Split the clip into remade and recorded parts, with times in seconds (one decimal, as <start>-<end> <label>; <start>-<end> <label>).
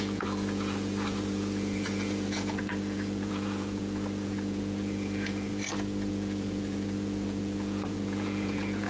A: 0.0-5.5 remade; 5.5-6.1 recorded; 6.1-8.9 remade